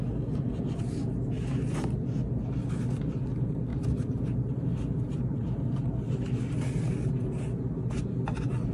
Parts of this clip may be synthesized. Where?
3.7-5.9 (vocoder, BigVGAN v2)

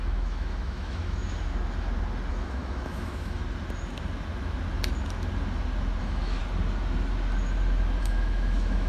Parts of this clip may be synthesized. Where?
0.0-1.2 (autoencoder, DAC-VAE); 2.3-3.4; 6.0-6.4; 8.0-8.9

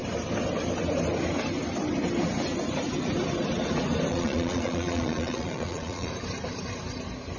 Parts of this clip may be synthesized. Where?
4.1-6.1 (vocoder, Vocos)

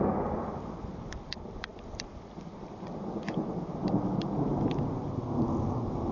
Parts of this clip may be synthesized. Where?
none